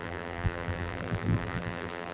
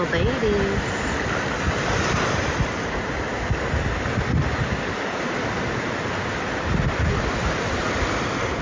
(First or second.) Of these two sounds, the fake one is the first